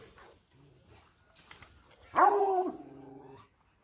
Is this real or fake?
real